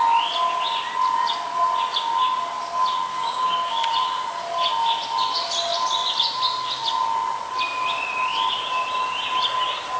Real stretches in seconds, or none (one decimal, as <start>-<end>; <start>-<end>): 0.0-3.1; 3.9-10.0